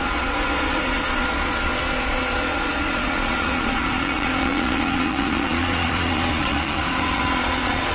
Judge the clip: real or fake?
fake